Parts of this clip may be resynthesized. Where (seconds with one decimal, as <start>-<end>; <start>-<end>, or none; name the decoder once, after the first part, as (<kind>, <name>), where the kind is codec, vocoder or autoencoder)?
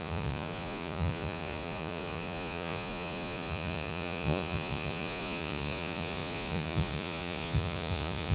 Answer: 0.0-8.3 (vocoder, Vocos)